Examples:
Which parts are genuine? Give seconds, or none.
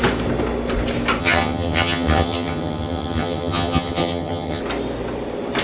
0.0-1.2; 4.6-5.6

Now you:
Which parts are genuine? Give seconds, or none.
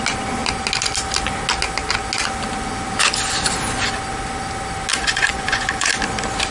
0.0-4.9; 5.9-6.5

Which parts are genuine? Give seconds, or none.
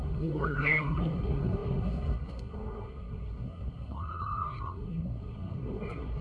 none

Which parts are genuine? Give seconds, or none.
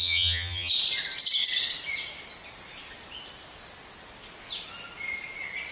0.7-5.7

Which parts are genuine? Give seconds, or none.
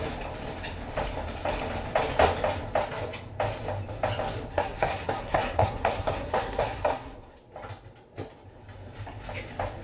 0.0-4.5; 7.4-9.8